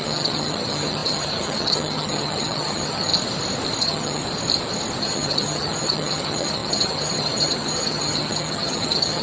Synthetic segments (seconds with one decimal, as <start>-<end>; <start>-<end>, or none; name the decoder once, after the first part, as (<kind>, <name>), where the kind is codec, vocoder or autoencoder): 0.0-3.1 (vocoder, HiFi-GAN); 3.8-4.2; 5.0-9.2